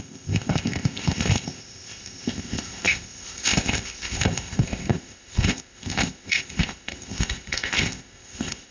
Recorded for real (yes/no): no